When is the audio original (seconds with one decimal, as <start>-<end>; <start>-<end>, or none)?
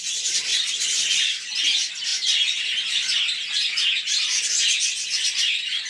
0.0-5.9